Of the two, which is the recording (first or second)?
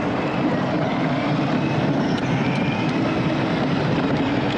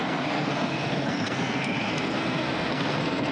first